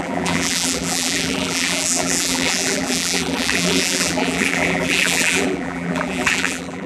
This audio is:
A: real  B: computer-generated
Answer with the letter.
B